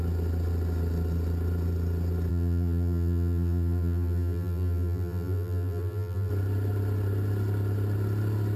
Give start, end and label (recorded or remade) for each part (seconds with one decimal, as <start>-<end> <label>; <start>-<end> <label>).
0.0-2.3 recorded; 2.3-6.3 remade; 6.3-8.6 recorded